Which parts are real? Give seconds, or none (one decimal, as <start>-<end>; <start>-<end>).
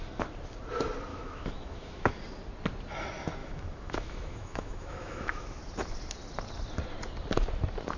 0.0-1.1; 2.1-3.4; 5.6-8.0